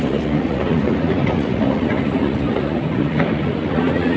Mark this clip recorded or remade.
remade